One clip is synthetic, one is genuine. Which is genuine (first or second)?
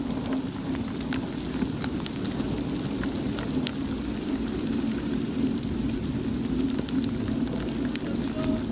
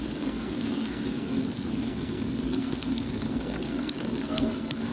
first